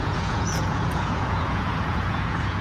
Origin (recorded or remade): remade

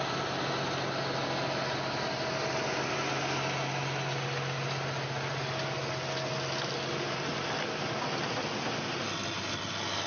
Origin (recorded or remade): recorded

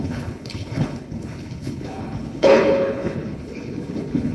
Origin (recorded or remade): remade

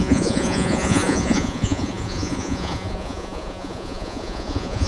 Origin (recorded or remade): remade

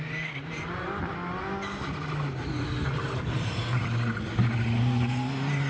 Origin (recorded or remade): recorded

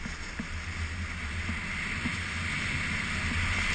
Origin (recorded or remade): recorded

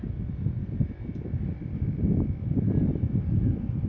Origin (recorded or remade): remade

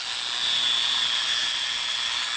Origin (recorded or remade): recorded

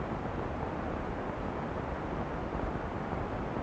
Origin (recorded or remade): recorded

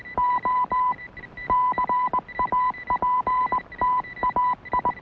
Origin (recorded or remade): recorded